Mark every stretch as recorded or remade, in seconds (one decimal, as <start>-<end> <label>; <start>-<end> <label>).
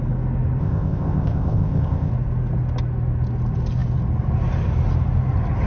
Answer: 0.0-0.6 recorded; 0.6-2.1 remade; 2.1-5.7 recorded